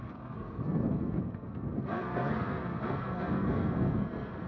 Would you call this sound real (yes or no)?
no